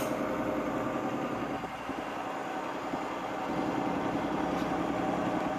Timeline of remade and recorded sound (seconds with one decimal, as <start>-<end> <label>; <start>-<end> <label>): 0.0-5.6 recorded